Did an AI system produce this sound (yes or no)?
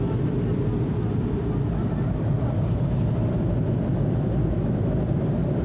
no